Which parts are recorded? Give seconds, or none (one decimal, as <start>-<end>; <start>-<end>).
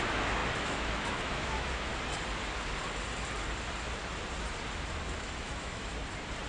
1.9-5.2; 5.9-6.5